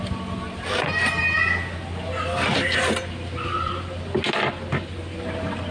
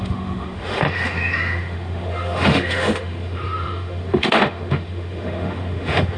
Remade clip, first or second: second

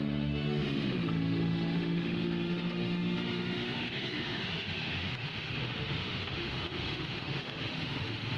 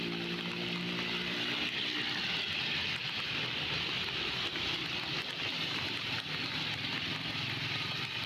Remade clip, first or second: first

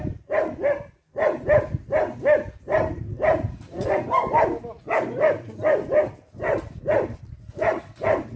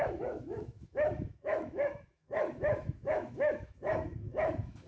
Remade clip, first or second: second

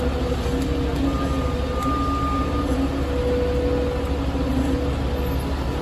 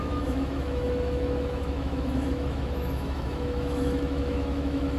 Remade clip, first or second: second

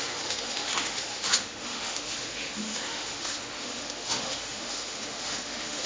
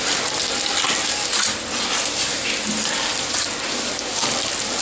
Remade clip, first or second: first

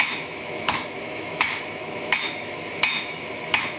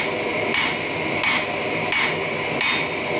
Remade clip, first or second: first